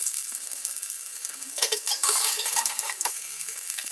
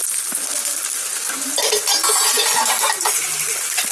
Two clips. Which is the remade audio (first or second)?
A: first